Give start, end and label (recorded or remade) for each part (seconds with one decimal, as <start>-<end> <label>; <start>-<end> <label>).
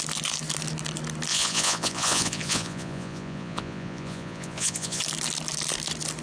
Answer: 0.0-1.3 recorded; 1.3-5.0 remade; 5.0-6.2 recorded